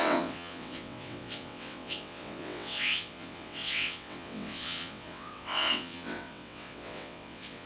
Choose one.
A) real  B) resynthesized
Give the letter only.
B